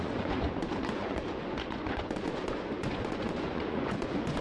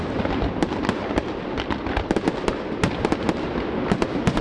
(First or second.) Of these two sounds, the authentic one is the second